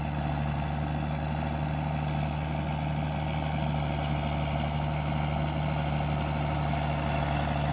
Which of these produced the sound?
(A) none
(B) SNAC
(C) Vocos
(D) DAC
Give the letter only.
A